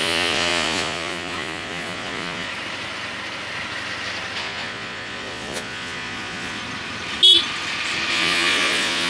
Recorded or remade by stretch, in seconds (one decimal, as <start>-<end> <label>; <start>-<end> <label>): 0.0-2.5 remade; 2.5-4.4 recorded; 4.4-6.6 remade; 6.6-8.1 recorded; 8.1-9.1 remade